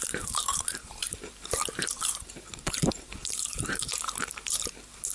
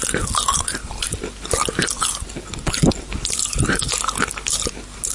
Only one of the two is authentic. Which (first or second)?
second